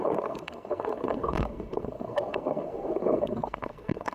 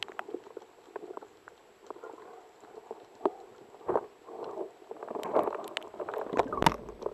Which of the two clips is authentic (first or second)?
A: second